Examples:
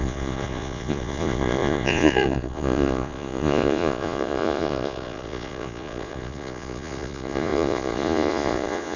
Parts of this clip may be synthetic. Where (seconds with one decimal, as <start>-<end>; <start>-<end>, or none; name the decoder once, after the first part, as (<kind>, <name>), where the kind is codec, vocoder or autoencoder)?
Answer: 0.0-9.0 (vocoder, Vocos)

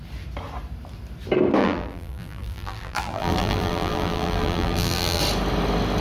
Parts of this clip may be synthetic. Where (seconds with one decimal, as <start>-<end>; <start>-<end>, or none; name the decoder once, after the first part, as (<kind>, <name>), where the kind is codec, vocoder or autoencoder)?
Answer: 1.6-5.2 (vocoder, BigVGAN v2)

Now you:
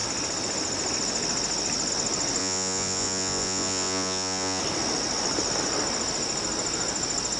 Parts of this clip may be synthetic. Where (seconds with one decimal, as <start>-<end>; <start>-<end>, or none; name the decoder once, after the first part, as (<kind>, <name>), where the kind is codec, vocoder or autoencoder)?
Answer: 2.4-4.6 (vocoder, Vocos)